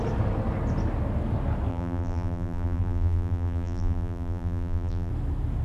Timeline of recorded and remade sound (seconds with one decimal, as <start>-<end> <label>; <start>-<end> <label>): 0.0-1.7 recorded; 1.7-5.1 remade; 5.1-5.6 recorded